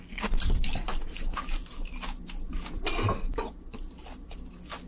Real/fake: real